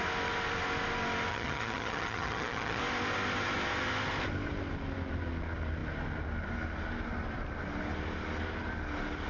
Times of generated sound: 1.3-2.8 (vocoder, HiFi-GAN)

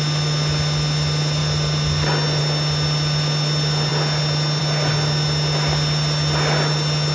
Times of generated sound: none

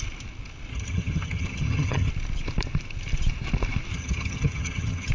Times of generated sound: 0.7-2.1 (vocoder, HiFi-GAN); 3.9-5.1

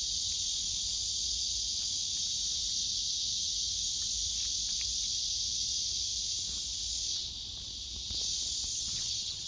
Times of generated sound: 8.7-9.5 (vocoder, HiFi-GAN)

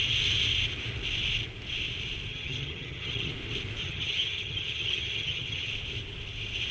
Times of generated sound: 2.3-3.3 (vocoder, HiFi-GAN); 3.8-5.7

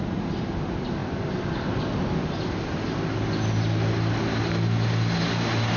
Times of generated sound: none

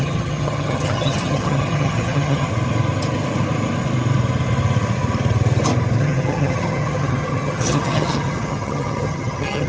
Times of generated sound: 0.0-2.5 (vocoder, HiFi-GAN); 6.0-9.7